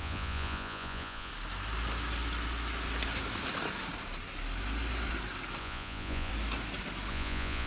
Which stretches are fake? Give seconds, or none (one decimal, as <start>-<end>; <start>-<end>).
0.0-1.3; 5.6-6.3; 7.1-7.7